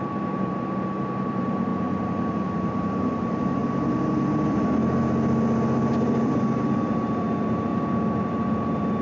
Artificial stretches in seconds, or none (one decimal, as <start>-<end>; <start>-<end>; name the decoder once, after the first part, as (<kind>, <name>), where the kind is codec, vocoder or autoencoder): 0.0-1.7 (vocoder, BigVGAN v2); 2.3-3.6; 5.9-7.7; 8.2-9.0